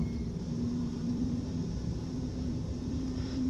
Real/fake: fake